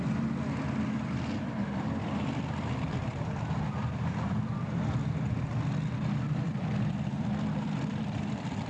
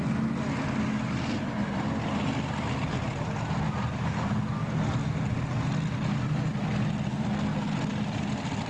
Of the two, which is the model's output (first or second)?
first